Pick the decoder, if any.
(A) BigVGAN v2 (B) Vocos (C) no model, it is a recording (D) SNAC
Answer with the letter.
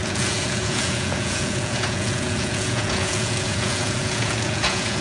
B